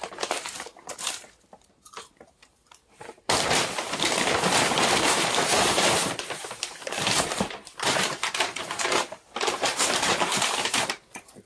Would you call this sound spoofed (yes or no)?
yes